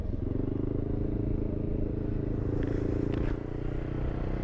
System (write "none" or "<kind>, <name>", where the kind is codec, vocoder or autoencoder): none